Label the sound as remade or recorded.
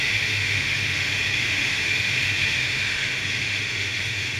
remade